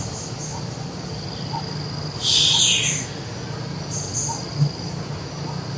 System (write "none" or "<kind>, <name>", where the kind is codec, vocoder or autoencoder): none